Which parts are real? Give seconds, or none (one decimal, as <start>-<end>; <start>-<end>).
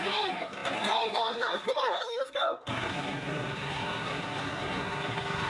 none